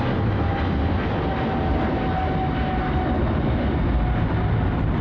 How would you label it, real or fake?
real